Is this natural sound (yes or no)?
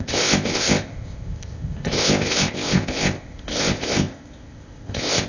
no